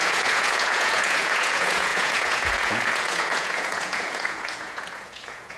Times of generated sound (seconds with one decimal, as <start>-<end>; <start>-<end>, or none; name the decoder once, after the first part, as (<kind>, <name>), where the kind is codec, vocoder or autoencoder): 0.0-5.6 (vocoder, Vocos)